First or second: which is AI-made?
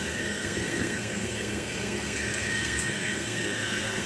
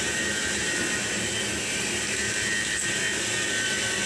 first